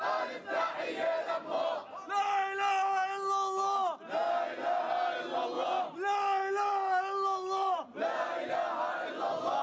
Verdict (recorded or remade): recorded